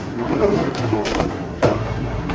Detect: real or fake fake